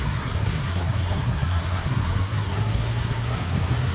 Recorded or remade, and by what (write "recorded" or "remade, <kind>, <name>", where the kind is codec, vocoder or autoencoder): remade, codec, SNAC